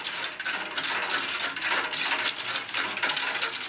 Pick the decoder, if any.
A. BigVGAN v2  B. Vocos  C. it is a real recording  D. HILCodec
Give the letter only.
C